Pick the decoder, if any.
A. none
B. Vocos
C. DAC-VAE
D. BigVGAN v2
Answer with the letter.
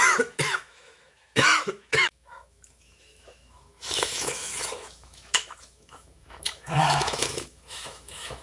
C